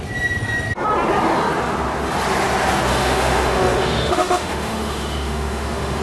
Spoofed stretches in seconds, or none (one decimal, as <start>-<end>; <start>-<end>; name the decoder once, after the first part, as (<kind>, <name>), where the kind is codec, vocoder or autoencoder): 2.9-6.0 (autoencoder, DAC-VAE)